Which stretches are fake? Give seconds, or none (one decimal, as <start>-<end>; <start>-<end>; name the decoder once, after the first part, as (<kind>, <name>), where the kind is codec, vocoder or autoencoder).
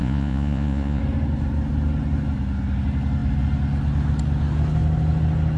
0.0-1.0 (vocoder, Vocos)